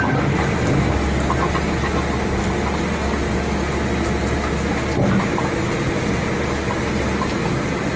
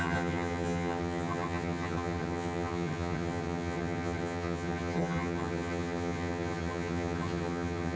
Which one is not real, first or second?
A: second